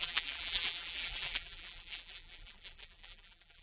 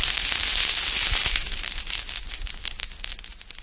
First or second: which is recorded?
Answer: second